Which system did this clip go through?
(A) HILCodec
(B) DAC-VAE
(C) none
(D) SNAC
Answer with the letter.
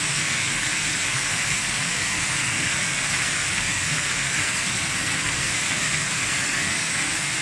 D